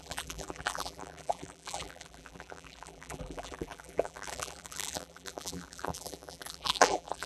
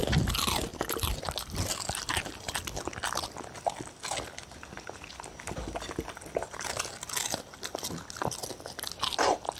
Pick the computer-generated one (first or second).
first